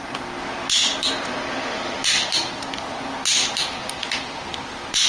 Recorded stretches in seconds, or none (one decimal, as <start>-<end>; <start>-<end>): 0.0-5.1